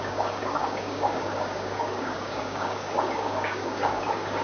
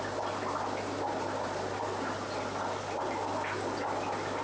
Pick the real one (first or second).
second